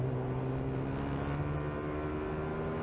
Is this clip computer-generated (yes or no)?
no